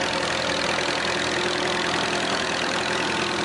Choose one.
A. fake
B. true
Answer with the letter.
B